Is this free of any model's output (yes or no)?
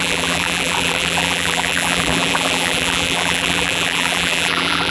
no